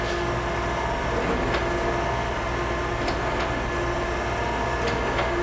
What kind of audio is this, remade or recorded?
recorded